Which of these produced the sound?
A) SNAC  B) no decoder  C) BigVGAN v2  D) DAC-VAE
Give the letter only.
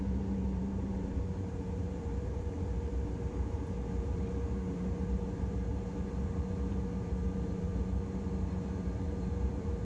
C